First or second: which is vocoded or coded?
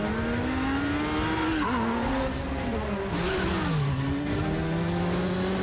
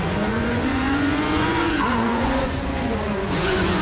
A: second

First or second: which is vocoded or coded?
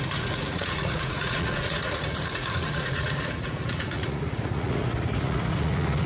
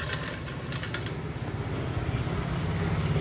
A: first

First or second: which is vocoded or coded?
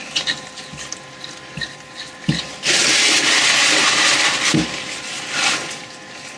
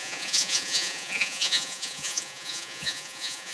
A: second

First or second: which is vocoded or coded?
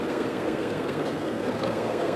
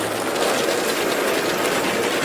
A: first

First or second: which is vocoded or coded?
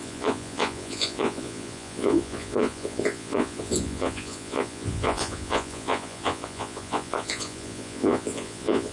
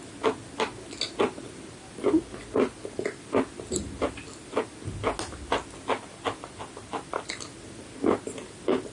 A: first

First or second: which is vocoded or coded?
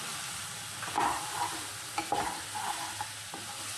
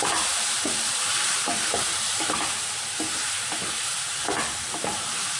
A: second